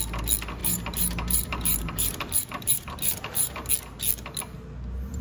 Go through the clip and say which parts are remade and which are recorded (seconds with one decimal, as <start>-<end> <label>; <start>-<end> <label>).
0.0-0.6 recorded; 0.6-3.7 remade; 3.7-5.2 recorded